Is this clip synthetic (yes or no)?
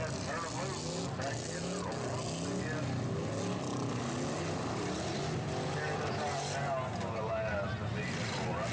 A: no